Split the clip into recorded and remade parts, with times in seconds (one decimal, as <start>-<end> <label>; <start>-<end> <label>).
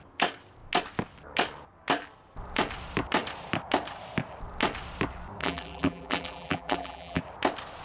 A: 0.0-5.4 recorded; 5.4-7.2 remade; 7.2-7.8 recorded